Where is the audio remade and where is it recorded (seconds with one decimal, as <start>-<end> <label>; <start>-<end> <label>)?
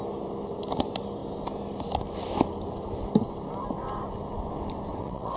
0.0-4.9 recorded; 4.9-5.4 remade